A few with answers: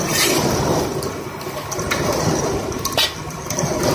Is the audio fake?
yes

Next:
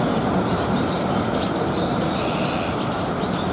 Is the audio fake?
no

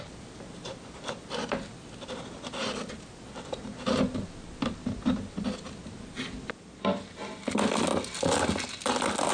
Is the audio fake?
no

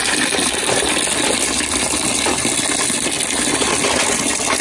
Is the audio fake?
no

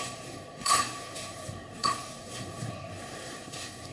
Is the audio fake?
yes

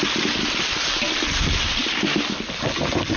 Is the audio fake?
no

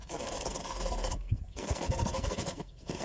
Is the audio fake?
yes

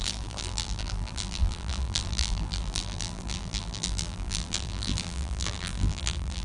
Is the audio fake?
yes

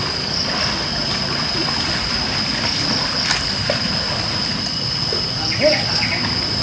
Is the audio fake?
no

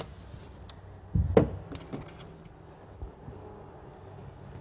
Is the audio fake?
no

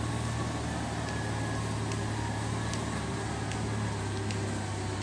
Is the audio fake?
no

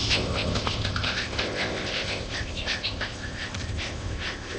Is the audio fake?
yes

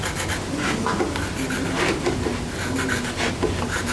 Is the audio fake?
no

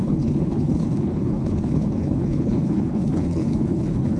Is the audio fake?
yes